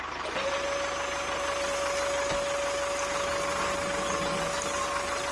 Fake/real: real